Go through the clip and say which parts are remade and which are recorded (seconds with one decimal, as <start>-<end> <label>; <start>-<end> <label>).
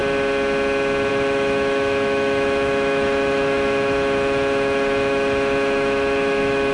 0.0-1.1 recorded; 1.1-6.7 remade